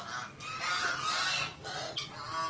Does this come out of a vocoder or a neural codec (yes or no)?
no